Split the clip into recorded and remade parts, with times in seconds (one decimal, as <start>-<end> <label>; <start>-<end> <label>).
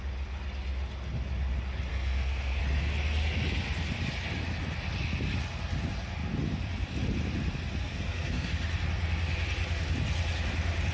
0.0-1.9 recorded; 1.9-2.6 remade; 2.6-7.8 recorded; 7.8-8.5 remade; 8.5-10.9 recorded